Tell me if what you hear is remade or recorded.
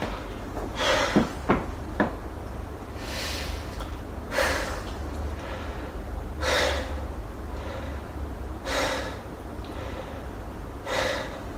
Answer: recorded